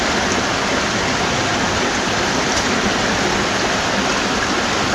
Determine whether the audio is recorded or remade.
remade